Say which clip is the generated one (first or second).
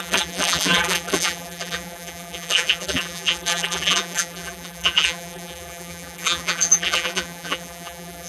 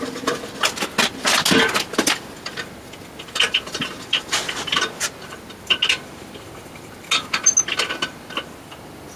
first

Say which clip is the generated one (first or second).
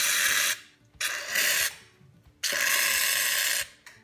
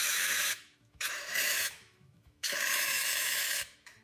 second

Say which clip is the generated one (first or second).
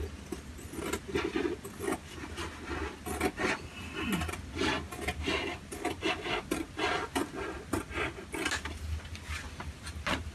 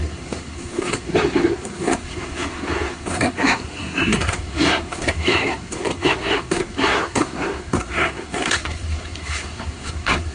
second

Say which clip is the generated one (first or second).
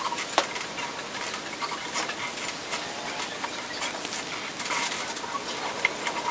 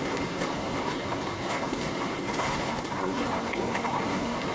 second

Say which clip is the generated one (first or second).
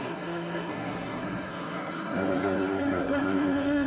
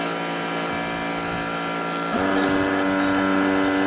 first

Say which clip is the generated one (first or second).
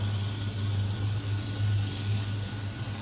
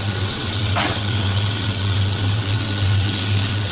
second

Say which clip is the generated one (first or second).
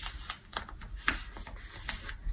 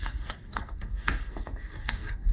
second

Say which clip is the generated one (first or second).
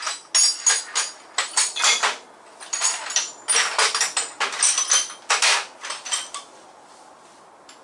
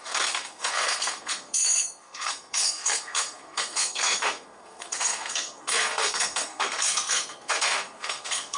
second